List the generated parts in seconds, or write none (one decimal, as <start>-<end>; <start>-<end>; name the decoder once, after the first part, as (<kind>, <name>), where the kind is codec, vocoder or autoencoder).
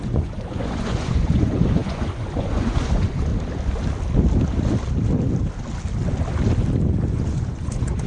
0.0-3.3 (vocoder, Vocos); 7.1-8.1